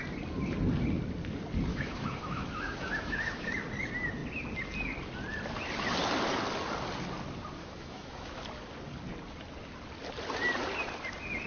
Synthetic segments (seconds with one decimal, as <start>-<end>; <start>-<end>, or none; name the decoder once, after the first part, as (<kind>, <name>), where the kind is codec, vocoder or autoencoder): 1.7-3.5 (autoencoder, DAC-VAE); 7.6-8.4